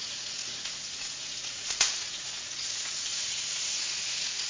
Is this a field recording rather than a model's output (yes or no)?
no